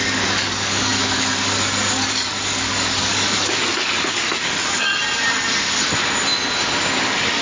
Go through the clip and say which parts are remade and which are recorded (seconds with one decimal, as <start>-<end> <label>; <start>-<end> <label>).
0.0-4.9 remade; 4.9-7.0 recorded; 7.0-7.4 remade

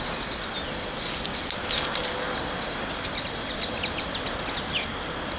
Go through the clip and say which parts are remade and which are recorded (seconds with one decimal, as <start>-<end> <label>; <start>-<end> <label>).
0.0-5.4 recorded

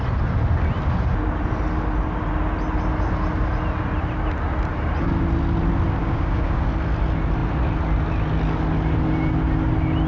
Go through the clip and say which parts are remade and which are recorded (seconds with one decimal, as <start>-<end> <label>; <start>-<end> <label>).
0.0-6.0 recorded; 6.0-6.7 remade; 6.7-10.1 recorded

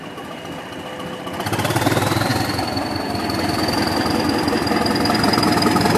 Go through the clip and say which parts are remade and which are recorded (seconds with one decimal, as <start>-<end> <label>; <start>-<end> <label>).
0.0-6.0 recorded

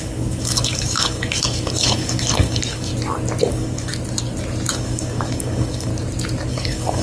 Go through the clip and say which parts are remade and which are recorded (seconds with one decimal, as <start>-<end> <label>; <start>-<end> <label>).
0.0-2.9 remade; 2.9-3.5 recorded; 3.5-3.9 remade; 3.9-4.7 recorded; 4.7-5.9 remade; 5.9-6.5 recorded; 6.5-7.0 remade

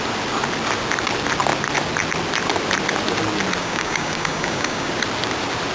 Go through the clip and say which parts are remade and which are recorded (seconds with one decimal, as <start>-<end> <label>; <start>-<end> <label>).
0.0-3.6 recorded; 3.6-4.9 remade; 4.9-5.7 recorded